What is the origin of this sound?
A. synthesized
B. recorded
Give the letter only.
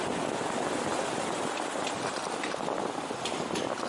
B